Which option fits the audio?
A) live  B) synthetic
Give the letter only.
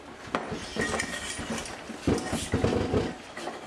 A